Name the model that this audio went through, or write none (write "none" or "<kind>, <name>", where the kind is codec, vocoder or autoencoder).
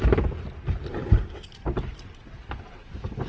none